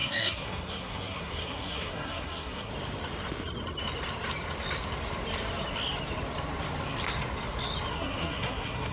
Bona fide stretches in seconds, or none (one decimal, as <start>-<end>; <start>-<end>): 2.7-7.9